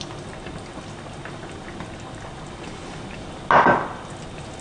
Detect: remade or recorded recorded